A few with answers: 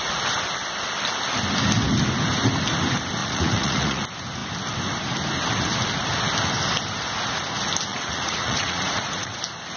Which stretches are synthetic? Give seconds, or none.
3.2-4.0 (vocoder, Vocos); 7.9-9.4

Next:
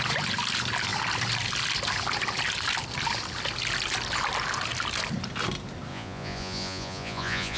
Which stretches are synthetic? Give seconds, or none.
5.9-7.6 (vocoder, Vocos)

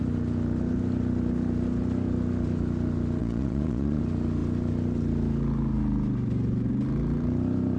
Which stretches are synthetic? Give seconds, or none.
3.2-4.0 (vocoder, Vocos)

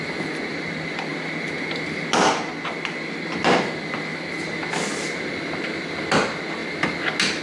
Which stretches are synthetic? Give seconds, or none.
none

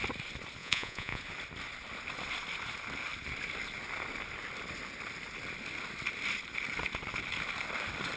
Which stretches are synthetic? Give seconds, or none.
0.6-1.2 (vocoder, Vocos)

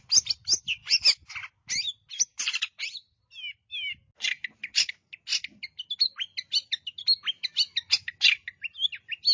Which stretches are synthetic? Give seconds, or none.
none